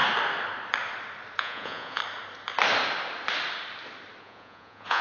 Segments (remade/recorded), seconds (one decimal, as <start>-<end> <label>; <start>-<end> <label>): 0.0-1.4 recorded; 1.4-2.0 remade; 2.0-4.2 recorded; 4.2-5.0 remade